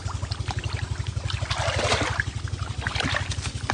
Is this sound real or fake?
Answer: real